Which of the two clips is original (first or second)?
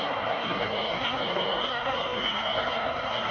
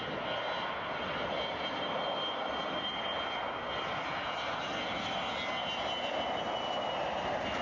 second